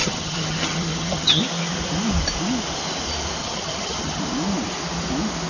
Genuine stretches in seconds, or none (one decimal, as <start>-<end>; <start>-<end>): 1.4-3.4; 4.2-5.5